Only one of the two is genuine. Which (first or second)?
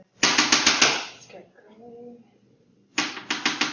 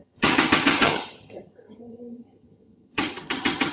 first